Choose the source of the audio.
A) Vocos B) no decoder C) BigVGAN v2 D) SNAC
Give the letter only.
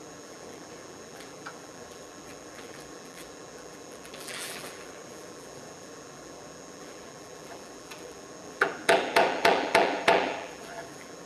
C